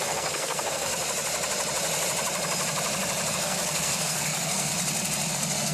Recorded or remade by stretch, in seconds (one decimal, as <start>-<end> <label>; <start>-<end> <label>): 0.0-0.9 remade; 0.9-3.3 recorded; 3.3-4.7 remade; 4.7-5.3 recorded; 5.3-5.7 remade